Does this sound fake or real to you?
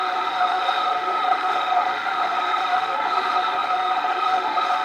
fake